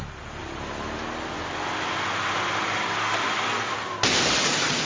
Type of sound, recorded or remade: recorded